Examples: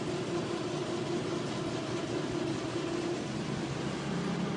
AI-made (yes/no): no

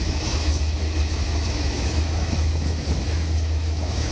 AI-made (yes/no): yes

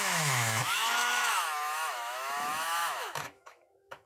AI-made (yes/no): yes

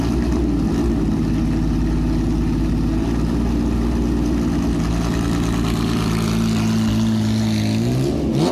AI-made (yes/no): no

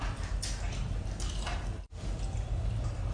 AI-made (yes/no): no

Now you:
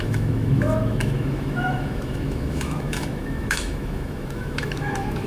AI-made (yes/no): yes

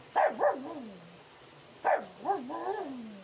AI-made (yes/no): no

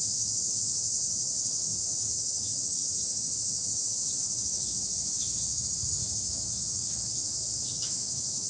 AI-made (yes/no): yes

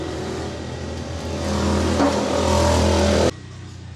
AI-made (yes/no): no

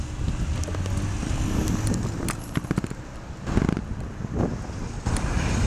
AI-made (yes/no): no